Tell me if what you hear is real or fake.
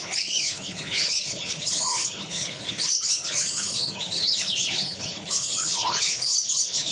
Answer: fake